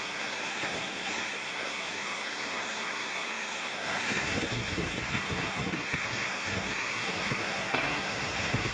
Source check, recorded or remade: remade